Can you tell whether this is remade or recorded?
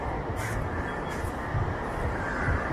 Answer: recorded